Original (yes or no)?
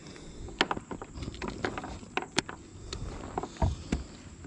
yes